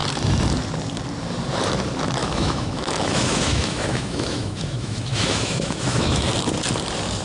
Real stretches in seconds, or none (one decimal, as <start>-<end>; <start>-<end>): 0.0-2.2; 6.3-7.2